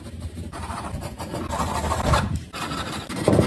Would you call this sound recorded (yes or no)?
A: no